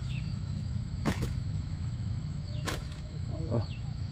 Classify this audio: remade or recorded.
remade